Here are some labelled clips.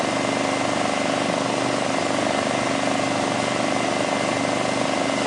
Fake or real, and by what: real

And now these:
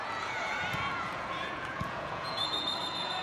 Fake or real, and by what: fake, vocoder, Vocos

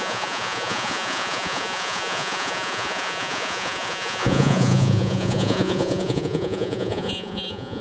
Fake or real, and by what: fake, vocoder, Vocos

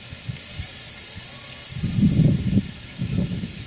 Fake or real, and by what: real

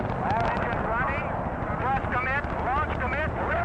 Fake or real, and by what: real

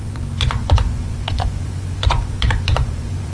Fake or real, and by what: fake, vocoder, Vocos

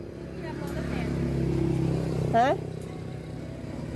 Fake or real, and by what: real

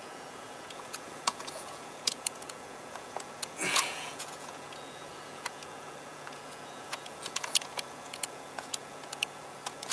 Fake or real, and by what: fake, vocoder, Vocos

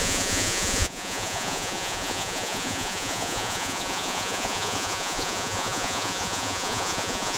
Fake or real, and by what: fake, vocoder, Vocos